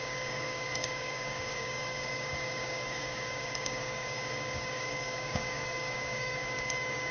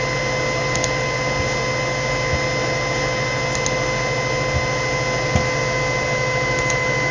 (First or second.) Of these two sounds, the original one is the second